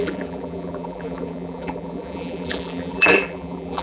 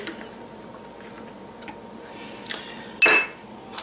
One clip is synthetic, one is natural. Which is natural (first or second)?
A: second